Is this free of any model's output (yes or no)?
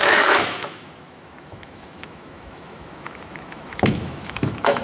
no